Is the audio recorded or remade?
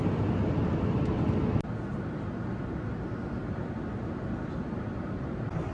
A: recorded